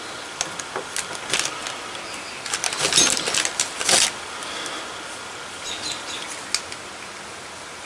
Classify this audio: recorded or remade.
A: recorded